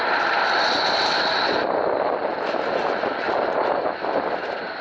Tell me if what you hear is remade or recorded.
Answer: recorded